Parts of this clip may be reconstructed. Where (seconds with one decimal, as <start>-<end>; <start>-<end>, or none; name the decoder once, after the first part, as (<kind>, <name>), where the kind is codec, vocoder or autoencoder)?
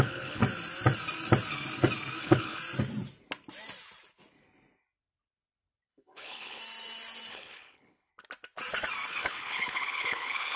0.0-0.4 (codec, HILCodec); 2.2-2.6; 5.9-6.6; 7.3-8.1; 9.1-10.6